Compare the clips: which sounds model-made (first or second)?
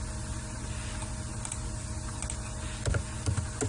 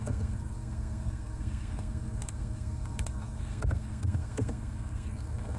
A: second